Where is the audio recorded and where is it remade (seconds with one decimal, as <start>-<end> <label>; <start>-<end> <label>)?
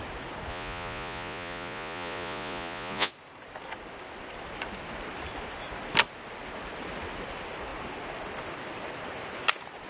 0.0-0.5 recorded; 0.5-3.1 remade; 3.1-9.9 recorded